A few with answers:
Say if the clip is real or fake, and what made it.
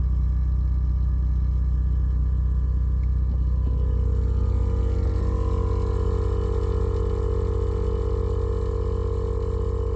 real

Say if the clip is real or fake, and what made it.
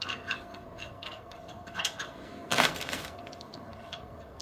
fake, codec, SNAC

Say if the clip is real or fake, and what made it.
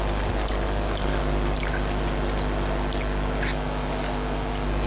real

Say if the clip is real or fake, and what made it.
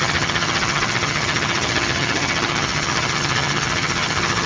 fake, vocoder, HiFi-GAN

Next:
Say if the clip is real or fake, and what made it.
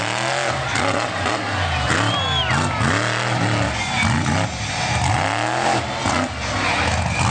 real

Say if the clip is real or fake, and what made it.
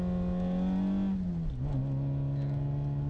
real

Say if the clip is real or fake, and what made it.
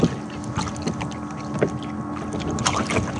real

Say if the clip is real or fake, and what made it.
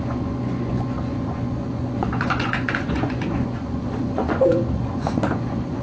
fake, vocoder, Vocos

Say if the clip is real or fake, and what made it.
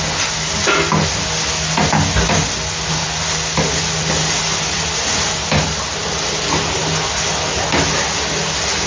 real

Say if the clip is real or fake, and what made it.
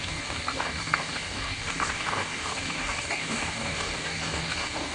fake, codec, DAC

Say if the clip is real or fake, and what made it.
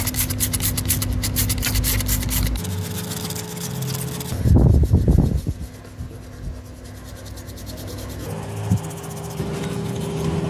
real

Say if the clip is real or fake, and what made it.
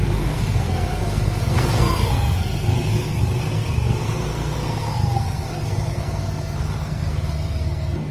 fake, codec, SNAC